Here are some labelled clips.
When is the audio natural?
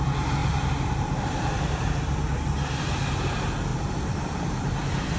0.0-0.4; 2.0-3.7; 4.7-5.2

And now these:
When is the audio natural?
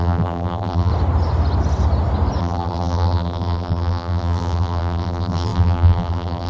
0.9-2.4